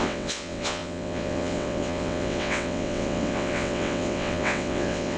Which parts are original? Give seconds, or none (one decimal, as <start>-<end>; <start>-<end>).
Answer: none